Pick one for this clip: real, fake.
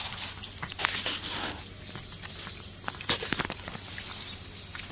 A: real